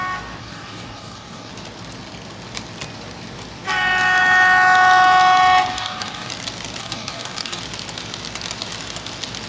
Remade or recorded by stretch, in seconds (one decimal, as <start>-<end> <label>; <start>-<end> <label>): 0.0-0.4 recorded; 0.4-1.5 remade; 1.5-5.7 recorded; 5.7-6.3 remade; 6.3-6.8 recorded; 6.8-7.6 remade; 7.6-9.5 recorded